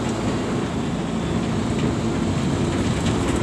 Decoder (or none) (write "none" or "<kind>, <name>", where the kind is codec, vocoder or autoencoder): none